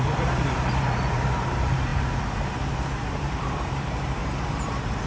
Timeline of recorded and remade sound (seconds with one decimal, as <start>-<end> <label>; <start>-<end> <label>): 0.0-4.2 remade; 4.2-5.1 recorded